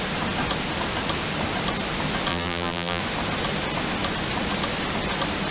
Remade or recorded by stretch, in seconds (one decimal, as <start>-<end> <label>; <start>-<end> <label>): 0.0-2.3 recorded; 2.3-3.0 remade; 3.0-5.5 recorded